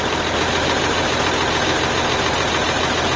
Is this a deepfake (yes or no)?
no